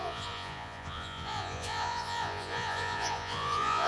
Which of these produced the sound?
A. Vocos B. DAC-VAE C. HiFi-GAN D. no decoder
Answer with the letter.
A